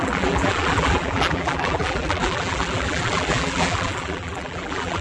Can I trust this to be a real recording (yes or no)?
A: no